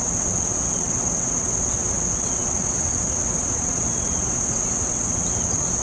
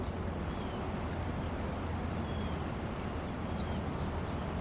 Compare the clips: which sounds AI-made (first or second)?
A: first